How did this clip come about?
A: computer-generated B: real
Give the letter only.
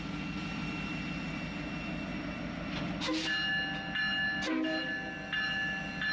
B